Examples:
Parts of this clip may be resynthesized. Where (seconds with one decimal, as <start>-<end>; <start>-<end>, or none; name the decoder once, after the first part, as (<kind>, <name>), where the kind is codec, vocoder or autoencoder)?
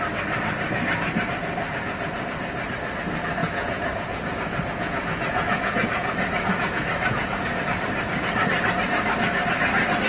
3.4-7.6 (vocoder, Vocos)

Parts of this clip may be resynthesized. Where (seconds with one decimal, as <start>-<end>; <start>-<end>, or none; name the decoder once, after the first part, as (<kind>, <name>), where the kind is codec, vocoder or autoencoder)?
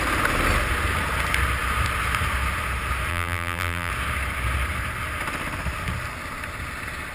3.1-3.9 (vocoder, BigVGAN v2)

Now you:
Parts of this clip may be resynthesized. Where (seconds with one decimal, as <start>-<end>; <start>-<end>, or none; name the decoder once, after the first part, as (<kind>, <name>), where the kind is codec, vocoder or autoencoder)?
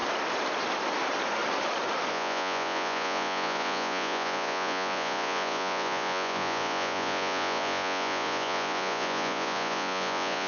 2.1-10.5 (vocoder, Vocos)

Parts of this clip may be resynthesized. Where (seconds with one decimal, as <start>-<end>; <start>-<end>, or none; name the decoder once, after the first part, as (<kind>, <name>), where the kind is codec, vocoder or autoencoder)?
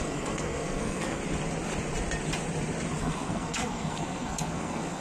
0.0-1.2 (codec, SNAC); 3.0-5.0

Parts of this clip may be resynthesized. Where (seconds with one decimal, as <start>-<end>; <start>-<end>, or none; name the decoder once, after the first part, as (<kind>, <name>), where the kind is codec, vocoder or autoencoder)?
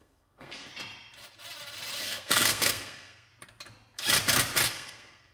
0.0-0.7 (codec, SNAC); 2.0-3.3; 4.7-5.3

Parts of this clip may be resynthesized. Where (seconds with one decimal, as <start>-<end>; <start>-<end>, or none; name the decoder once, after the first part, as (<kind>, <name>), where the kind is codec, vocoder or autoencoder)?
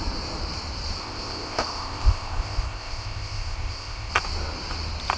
1.0-4.1 (codec, ZipCodec)